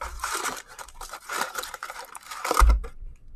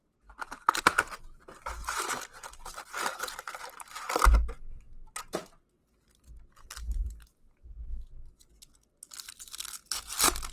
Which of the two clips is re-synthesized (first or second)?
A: first